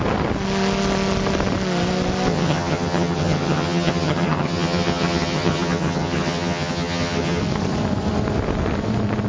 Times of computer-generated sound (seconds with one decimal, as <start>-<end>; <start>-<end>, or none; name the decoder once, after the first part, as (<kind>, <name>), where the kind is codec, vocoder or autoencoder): 2.3-7.4 (vocoder, HiFi-GAN)